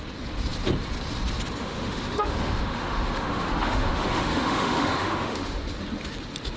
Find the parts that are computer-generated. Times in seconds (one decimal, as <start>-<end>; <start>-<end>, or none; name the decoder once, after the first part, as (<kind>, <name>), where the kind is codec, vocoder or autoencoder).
1.6-5.6 (autoencoder, DAC-VAE)